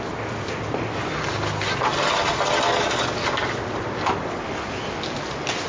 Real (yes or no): yes